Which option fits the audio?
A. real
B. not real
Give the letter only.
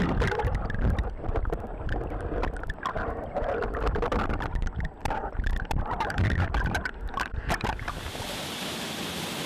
B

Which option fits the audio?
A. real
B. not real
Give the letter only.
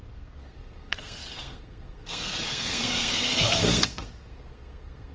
B